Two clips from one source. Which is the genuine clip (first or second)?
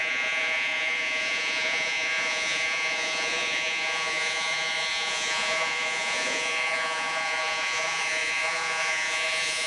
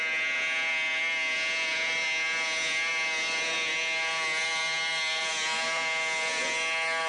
second